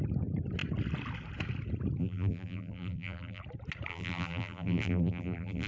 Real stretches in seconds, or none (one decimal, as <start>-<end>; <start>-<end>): 0.0-2.0; 3.4-3.9